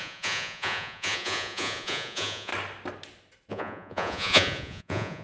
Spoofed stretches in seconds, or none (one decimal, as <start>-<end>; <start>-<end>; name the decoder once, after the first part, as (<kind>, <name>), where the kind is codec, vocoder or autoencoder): 0.0-2.5 (vocoder, Vocos); 3.5-5.2